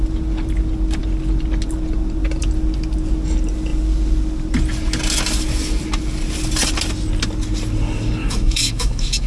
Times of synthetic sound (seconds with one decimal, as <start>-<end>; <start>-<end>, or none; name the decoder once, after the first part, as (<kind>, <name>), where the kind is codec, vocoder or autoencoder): 8.2-9.3 (autoencoder, DAC-VAE)